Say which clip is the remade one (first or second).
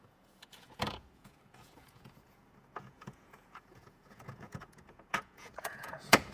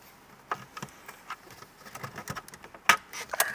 first